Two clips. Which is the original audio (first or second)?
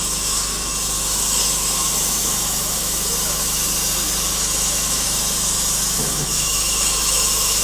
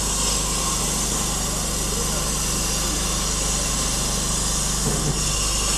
second